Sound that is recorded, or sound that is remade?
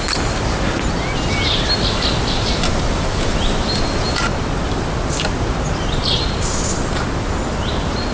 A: recorded